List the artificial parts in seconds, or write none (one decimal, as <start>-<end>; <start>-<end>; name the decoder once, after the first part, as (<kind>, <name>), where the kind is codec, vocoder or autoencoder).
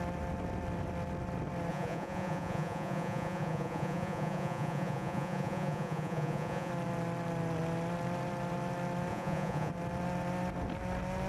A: 1.7-6.7 (vocoder, Vocos); 9.1-9.7